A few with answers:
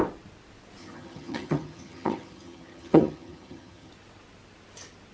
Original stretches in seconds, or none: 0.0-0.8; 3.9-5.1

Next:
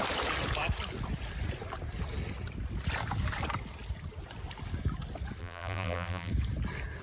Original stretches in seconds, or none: 0.0-5.4; 6.3-7.0

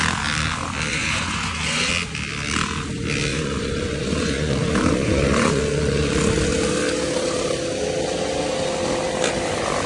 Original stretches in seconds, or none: 0.0-0.9; 1.9-3.3; 6.1-9.9

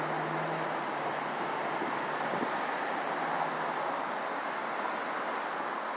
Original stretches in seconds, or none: 0.0-6.0